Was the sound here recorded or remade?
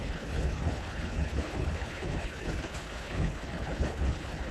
remade